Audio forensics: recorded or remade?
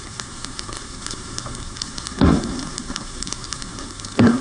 remade